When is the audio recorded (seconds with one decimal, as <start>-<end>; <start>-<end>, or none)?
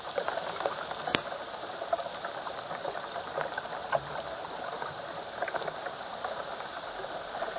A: 0.0-7.6